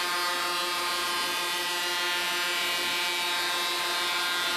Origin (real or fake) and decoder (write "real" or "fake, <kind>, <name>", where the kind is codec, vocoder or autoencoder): real